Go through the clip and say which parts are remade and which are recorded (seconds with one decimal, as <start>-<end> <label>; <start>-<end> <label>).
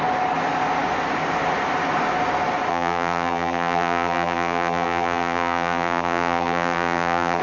0.0-2.7 recorded; 2.7-7.4 remade